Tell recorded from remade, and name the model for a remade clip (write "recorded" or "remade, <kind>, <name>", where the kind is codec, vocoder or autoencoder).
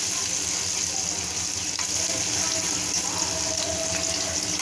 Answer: recorded